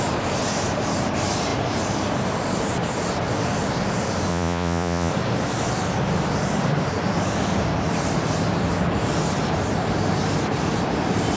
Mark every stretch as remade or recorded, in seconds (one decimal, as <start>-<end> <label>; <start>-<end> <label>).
0.0-4.3 recorded; 4.3-5.1 remade; 5.1-11.4 recorded